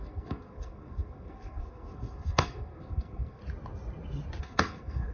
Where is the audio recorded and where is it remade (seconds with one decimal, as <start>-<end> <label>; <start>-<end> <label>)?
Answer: 0.0-3.4 remade; 3.4-4.4 recorded; 4.4-5.1 remade

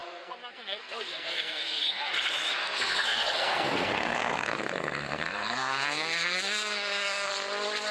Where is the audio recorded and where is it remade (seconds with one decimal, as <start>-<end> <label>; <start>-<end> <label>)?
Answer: 0.0-2.1 remade; 2.1-2.6 recorded; 2.6-7.3 remade; 7.3-7.9 recorded

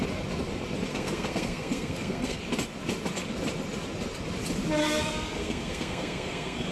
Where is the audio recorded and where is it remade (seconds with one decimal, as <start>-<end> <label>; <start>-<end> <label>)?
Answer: 0.0-0.9 recorded; 0.9-2.4 remade; 2.4-4.8 recorded; 4.8-6.7 remade

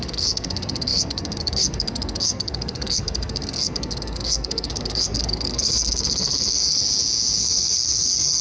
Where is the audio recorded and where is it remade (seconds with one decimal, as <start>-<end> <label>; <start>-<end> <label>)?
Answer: 0.0-6.8 remade; 6.8-7.4 recorded; 7.4-8.4 remade